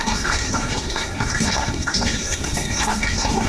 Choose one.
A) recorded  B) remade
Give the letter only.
B